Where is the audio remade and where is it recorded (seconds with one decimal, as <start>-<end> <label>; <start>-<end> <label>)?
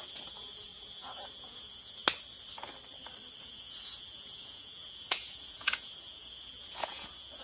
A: 0.0-2.0 remade; 2.0-3.4 recorded; 3.4-7.4 remade